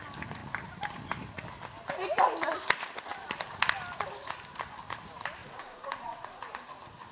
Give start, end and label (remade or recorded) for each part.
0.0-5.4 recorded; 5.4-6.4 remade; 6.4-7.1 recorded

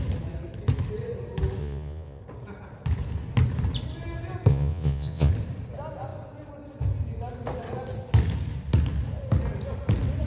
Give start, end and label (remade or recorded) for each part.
0.0-1.6 recorded; 1.6-2.2 remade; 2.2-4.5 recorded; 4.5-5.3 remade; 5.3-10.3 recorded

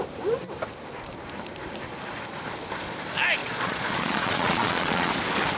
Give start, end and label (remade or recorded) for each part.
0.0-3.4 recorded; 3.4-5.1 remade; 5.1-5.6 recorded

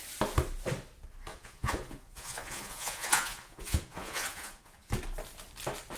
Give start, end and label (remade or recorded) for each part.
0.0-1.3 recorded; 1.3-4.9 remade; 4.9-6.0 recorded

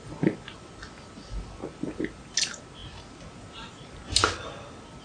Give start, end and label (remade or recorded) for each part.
0.0-5.0 recorded